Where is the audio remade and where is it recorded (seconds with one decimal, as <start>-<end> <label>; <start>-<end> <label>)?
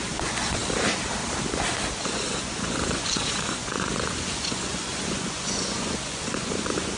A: 0.0-0.6 remade; 0.6-2.0 recorded; 2.0-7.0 remade